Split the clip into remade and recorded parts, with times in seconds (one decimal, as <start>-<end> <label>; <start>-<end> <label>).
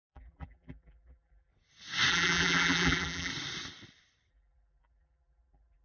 0.0-1.5 remade; 1.5-2.1 recorded; 2.1-3.3 remade; 3.3-4.3 recorded; 4.3-5.8 remade